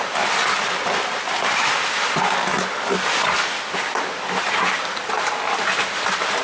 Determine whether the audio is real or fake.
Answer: real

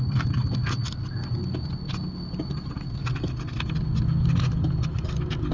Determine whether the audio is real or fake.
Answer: real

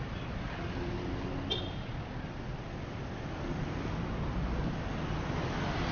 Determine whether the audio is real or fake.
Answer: real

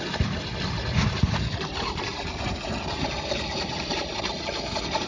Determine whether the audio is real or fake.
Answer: real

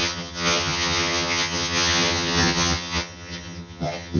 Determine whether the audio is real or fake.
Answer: fake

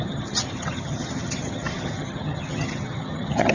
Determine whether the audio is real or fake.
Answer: fake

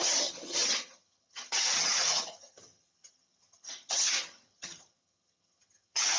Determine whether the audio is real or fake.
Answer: fake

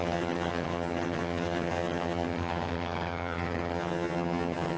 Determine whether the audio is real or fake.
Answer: fake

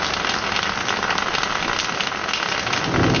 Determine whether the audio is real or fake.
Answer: real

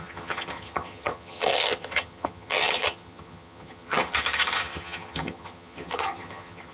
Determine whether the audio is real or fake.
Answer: fake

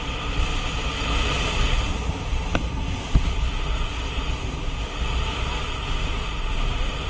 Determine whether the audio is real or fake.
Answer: real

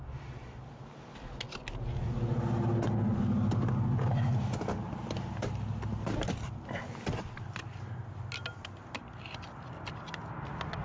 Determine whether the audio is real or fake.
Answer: real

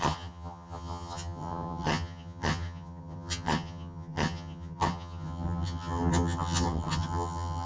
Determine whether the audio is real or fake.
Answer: fake